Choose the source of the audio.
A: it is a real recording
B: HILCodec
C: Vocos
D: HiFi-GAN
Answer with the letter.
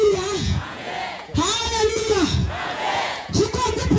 C